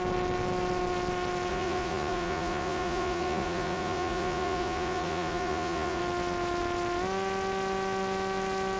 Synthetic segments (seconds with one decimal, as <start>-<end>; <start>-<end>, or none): 1.5-6.0